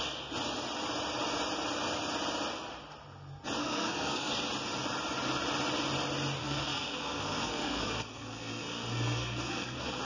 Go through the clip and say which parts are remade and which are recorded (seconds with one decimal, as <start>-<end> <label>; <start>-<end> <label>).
0.0-3.6 recorded; 3.6-4.3 remade; 4.3-6.4 recorded; 6.4-10.0 remade